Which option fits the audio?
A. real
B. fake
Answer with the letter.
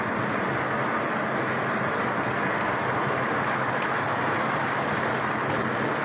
A